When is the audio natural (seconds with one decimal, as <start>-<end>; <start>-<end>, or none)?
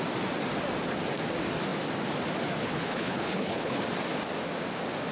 0.0-2.6; 3.8-5.1